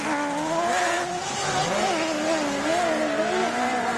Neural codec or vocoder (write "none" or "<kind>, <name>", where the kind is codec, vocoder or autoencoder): none